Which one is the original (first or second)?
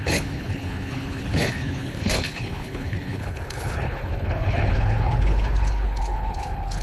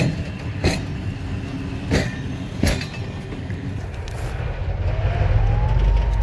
second